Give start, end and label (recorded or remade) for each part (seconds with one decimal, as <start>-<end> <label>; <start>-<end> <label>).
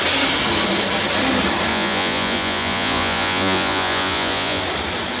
0.0-1.7 recorded; 1.7-4.6 remade; 4.6-5.2 recorded